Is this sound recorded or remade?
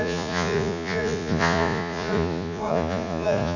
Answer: remade